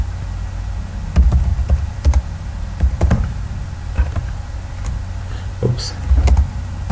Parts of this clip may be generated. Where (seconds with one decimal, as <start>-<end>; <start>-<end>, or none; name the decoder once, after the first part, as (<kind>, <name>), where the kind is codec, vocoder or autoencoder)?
1.5-5.5 (vocoder, BigVGAN v2)